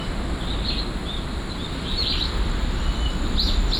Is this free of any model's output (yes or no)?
yes